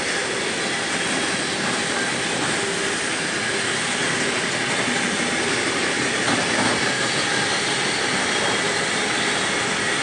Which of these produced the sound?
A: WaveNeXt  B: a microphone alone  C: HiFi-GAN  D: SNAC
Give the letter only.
B